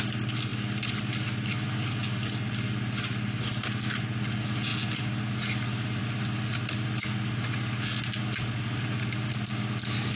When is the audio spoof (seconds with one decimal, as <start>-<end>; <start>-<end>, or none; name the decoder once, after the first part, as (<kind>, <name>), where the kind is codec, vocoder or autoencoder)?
none

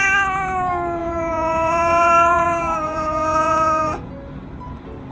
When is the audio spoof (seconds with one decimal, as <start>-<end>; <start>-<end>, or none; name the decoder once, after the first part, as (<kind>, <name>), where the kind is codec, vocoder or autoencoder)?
1.0-4.1 (vocoder, Vocos)